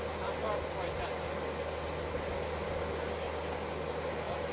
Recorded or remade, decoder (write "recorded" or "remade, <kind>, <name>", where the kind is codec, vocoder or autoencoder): recorded